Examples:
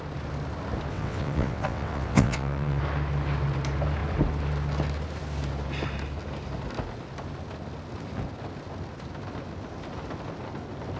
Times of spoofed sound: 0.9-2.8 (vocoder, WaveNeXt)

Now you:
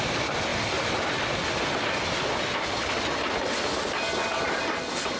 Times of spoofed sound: none

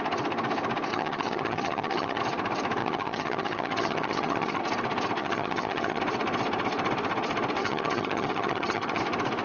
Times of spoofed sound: 0.9-2.2 (vocoder, HiFi-GAN); 2.8-4.6; 5.2-6.0; 7.6-9.0